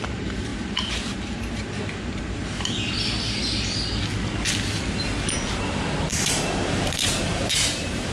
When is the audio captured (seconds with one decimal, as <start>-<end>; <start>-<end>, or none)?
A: 2.4-5.5